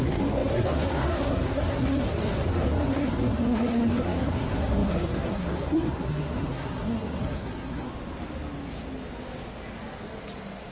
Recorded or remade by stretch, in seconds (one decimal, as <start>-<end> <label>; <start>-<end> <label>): 0.0-7.9 remade; 7.9-10.7 recorded